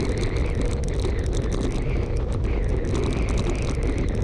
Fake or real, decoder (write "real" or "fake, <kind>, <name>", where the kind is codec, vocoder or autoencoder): real